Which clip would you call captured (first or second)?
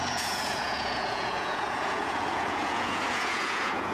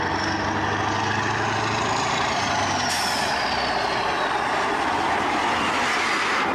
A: second